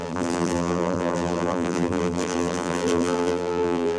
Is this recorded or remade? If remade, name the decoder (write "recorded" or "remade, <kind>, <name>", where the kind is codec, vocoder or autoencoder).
remade, vocoder, BigVGAN v2